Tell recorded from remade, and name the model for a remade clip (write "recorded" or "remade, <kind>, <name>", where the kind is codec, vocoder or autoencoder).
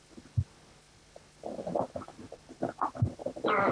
recorded